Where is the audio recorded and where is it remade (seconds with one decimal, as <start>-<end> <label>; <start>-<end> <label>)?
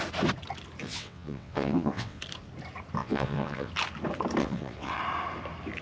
0.0-0.8 recorded; 0.8-2.2 remade; 2.2-3.0 recorded; 3.0-3.7 remade; 3.7-4.4 recorded; 4.4-5.0 remade; 5.0-5.8 recorded